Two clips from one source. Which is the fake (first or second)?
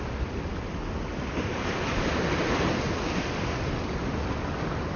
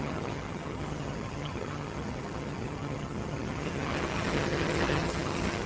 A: second